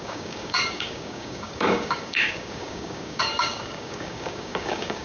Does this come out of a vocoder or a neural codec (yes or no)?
yes